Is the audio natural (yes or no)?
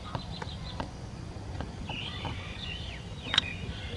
no